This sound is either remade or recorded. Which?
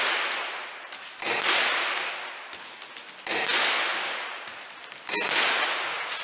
recorded